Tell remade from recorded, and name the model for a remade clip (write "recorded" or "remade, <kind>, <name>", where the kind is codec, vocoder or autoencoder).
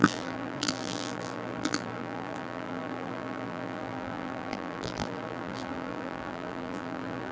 remade, vocoder, BigVGAN v2